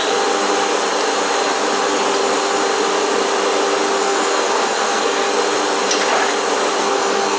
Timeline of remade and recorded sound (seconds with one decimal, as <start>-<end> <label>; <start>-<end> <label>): 0.0-4.0 recorded; 4.0-5.3 remade; 5.3-6.8 recorded; 6.8-7.4 remade